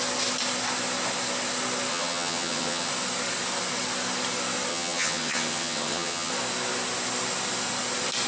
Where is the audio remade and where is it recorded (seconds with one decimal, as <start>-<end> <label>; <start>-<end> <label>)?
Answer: 0.0-1.9 recorded; 1.9-2.9 remade; 2.9-4.7 recorded; 4.7-6.3 remade; 6.3-8.3 recorded